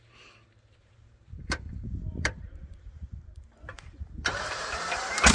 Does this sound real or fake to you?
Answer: fake